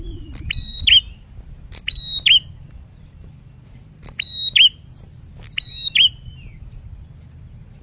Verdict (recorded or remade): recorded